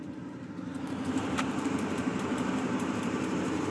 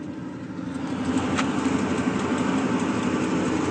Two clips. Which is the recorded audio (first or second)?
second